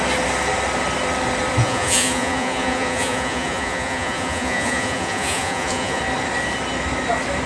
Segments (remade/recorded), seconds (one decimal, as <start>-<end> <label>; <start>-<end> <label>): 0.0-1.6 recorded; 1.6-6.0 remade; 6.0-7.5 recorded